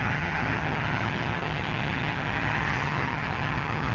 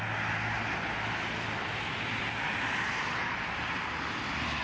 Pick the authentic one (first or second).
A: second